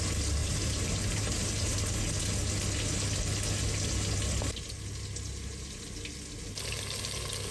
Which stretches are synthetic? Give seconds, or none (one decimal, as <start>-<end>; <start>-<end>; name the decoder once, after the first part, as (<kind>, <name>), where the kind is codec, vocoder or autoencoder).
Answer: 0.4-2.0 (vocoder, BigVGAN v2)